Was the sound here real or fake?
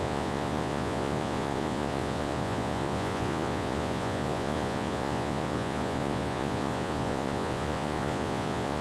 fake